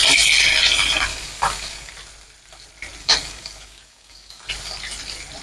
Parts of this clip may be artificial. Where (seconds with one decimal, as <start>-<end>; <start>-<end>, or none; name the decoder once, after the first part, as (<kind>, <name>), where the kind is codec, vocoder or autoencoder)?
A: 1.1-1.9 (codec, DAC); 3.0-4.5